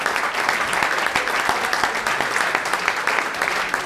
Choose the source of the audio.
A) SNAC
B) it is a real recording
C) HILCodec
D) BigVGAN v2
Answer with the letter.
B